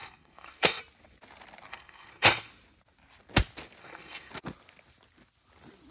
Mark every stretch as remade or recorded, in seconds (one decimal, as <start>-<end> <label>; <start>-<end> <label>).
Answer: 0.0-0.8 remade; 0.8-1.7 recorded; 1.7-2.5 remade; 2.5-3.8 recorded; 3.8-4.3 remade; 4.3-5.9 recorded